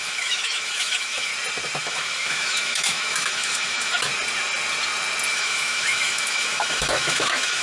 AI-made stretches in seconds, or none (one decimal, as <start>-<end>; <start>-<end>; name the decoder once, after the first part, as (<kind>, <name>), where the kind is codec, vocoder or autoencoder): 0.0-1.3 (autoencoder, DAC-VAE); 1.8-4.1; 5.3-7.6